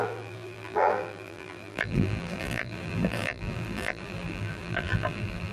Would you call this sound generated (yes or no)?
yes